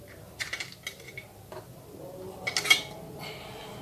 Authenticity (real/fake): real